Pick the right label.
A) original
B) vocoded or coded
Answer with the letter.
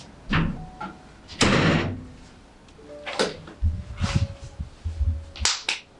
A